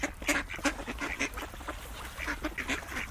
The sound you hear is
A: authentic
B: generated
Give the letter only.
A